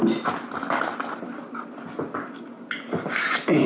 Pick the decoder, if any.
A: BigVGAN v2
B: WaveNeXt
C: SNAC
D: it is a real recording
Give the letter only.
D